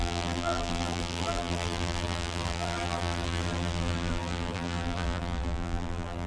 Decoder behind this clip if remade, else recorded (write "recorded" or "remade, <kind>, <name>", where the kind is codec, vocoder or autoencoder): remade, vocoder, BigVGAN v2